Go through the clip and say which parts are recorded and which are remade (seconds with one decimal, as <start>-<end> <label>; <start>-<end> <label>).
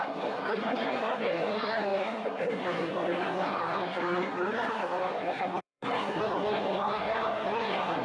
0.0-8.0 remade